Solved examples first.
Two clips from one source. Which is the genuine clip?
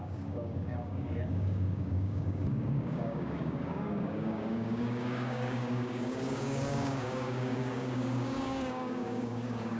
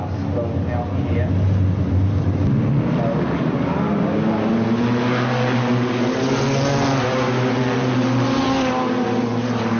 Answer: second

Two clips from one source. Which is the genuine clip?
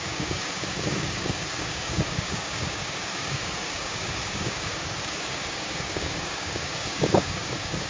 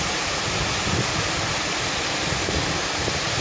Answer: second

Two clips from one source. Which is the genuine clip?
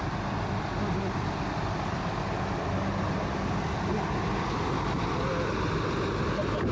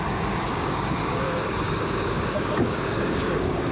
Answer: first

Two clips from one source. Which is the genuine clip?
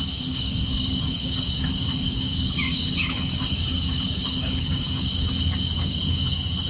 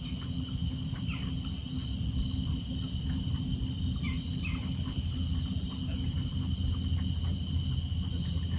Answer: second